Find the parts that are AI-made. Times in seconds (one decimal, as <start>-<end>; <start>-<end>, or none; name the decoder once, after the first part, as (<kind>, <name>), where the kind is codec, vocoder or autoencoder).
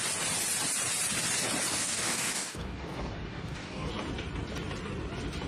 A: 1.7-3.9 (codec, DAC)